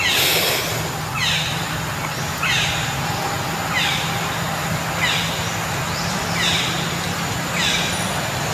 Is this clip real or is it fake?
real